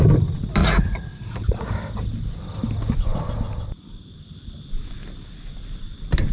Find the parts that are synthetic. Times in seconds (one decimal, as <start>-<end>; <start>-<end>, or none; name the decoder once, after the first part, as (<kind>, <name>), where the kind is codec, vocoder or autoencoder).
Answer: 0.6-1.7 (vocoder, Vocos)